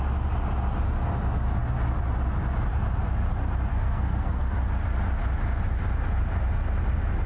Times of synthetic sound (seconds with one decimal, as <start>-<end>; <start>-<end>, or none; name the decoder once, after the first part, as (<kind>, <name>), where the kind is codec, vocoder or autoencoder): 3.7-4.4 (codec, SNAC)